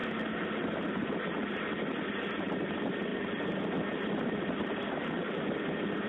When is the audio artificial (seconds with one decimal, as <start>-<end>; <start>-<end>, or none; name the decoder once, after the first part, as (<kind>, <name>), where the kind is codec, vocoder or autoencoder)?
3.1-6.1 (vocoder, BigVGAN v2)